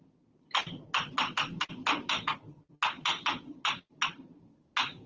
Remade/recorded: recorded